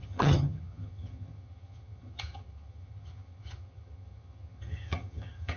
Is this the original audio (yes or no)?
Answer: no